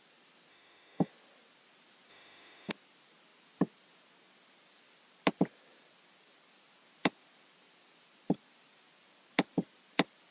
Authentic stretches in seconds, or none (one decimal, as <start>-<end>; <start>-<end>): 0.0-0.5; 1.1-2.1; 2.7-10.3